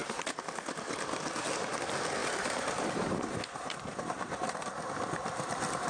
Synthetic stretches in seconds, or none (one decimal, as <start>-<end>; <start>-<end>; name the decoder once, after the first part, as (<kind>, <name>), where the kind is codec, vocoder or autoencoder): 0.0-1.2 (vocoder, BigVGAN v2); 2.2-5.9